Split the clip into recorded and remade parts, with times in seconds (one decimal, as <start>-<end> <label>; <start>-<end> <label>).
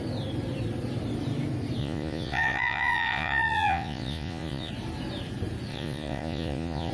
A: 0.0-1.8 recorded; 1.8-4.7 remade; 4.7-5.7 recorded; 5.7-6.9 remade